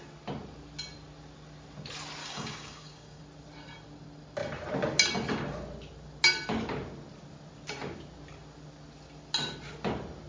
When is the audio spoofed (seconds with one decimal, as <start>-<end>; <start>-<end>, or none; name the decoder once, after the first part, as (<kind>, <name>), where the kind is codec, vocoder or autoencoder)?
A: 2.2-3.2 (codec, DAC)